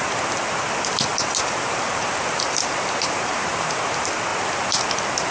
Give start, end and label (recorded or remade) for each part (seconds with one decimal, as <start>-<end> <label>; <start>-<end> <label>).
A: 0.0-1.1 recorded; 1.1-3.8 remade; 3.8-5.3 recorded